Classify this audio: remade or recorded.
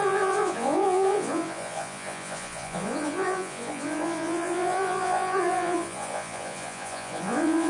remade